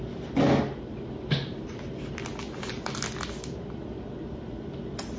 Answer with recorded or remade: recorded